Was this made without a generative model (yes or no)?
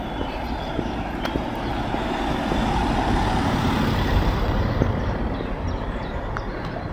no